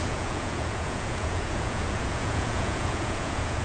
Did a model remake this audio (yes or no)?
yes